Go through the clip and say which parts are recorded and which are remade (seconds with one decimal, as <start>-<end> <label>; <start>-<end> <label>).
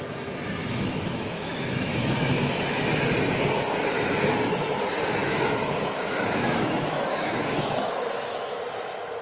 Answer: 0.0-0.6 recorded; 0.6-2.6 remade; 2.6-5.2 recorded; 5.2-8.6 remade; 8.6-9.2 recorded